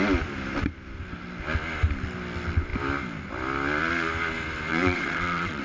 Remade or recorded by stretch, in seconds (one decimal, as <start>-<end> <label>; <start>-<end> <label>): 0.0-4.7 recorded; 4.7-5.6 remade